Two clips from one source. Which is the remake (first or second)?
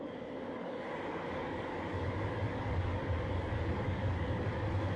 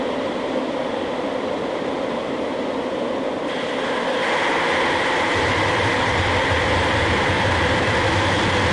first